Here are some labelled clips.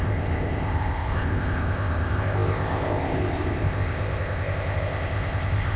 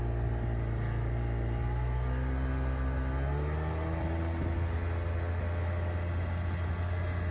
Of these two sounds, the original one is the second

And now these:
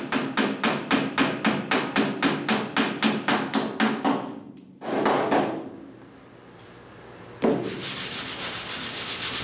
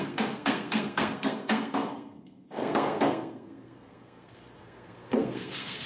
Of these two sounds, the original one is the first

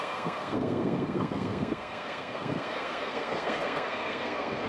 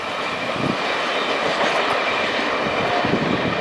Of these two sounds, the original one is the second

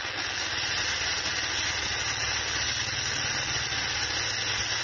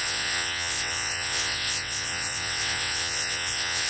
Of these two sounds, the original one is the first